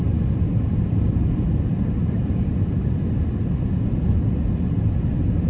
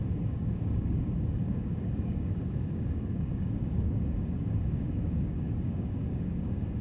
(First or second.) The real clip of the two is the first